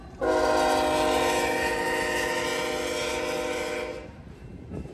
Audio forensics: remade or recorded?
remade